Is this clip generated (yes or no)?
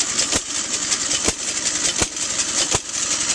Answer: no